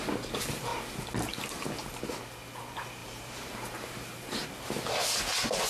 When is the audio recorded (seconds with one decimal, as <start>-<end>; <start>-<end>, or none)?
0.0-3.0; 4.9-5.7